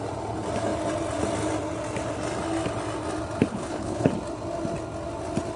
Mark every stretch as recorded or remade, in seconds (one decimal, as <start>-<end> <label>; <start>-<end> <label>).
0.0-3.5 recorded; 3.5-4.1 remade; 4.1-5.6 recorded